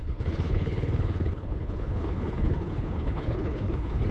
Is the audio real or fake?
fake